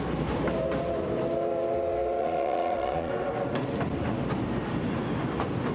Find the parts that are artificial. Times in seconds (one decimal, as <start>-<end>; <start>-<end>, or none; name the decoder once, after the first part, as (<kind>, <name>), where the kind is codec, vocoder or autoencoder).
2.2-3.1 (vocoder, Vocos)